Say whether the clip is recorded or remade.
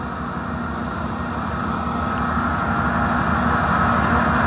recorded